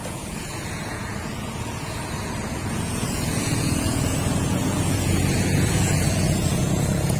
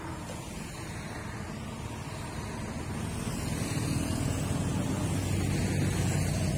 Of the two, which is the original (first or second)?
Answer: second